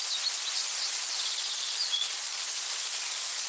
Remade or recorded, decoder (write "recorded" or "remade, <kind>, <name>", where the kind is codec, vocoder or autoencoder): remade, vocoder, Vocos